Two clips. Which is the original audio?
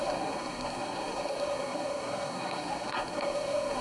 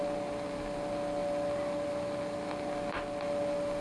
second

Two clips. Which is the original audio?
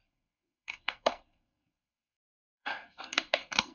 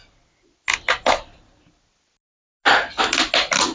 second